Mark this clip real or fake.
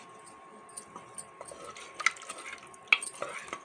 real